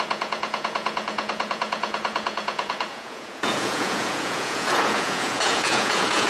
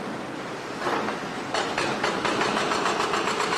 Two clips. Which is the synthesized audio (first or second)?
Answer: first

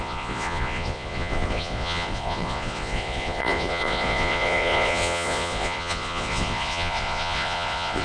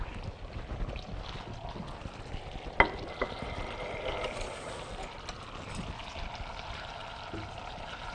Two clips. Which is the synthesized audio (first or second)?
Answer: first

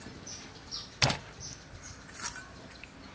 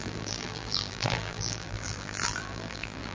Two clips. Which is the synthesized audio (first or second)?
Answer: second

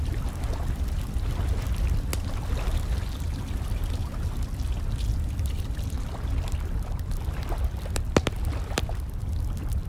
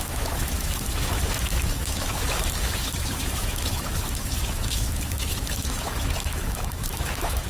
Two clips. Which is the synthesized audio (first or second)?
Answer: second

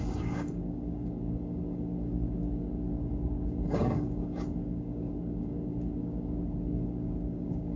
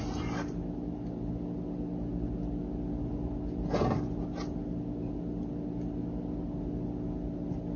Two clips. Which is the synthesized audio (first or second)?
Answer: first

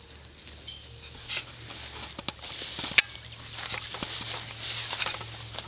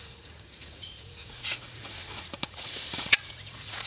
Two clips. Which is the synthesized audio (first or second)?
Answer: second